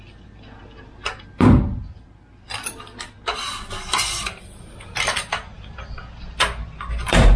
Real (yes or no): yes